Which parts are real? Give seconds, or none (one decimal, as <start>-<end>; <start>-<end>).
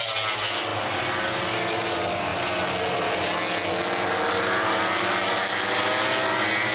0.0-6.7